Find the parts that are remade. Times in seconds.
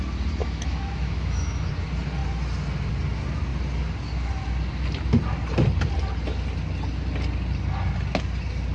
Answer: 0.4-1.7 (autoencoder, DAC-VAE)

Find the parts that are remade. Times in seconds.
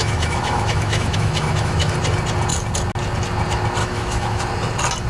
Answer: 0.0-1.9 (autoencoder, DAC-VAE); 3.8-4.4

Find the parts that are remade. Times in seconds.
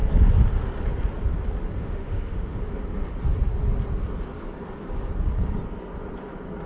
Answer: 1.8-2.6 (autoencoder, DAC-VAE)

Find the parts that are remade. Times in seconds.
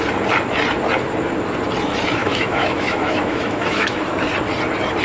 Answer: 2.2-4.0 (autoencoder, DAC-VAE)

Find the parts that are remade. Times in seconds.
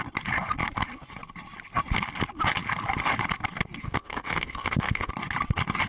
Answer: 3.8-5.1 (autoencoder, DAC-VAE)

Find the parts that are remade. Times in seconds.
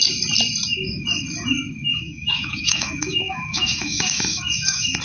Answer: 1.9-5.0 (autoencoder, DAC-VAE)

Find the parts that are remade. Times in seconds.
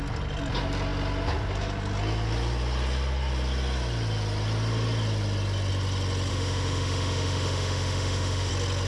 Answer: 6.3-8.5 (autoencoder, DAC-VAE)